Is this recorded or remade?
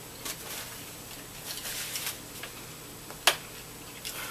recorded